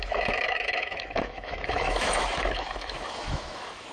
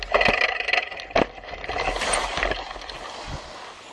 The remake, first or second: first